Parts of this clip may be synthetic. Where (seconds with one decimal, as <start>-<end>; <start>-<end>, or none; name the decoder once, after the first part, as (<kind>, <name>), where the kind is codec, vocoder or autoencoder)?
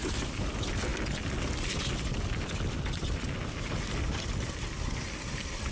none